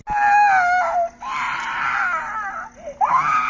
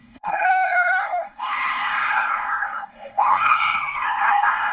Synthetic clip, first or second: second